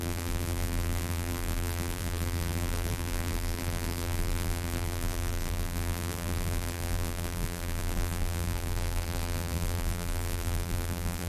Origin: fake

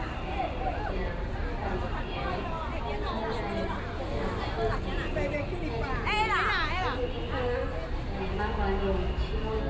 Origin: real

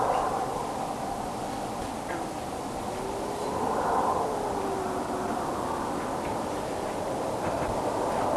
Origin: fake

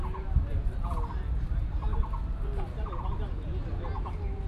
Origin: real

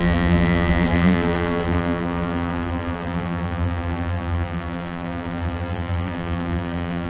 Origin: fake